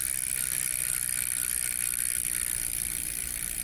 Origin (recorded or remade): recorded